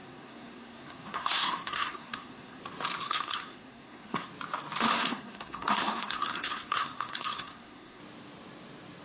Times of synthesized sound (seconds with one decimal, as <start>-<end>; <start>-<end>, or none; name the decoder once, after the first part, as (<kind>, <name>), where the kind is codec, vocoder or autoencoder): 0.0-2.6 (codec, SNAC); 3.0-4.3; 4.9-8.0